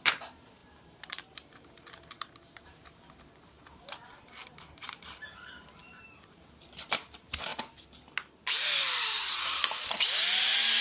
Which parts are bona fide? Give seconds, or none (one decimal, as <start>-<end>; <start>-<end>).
7.5-8.7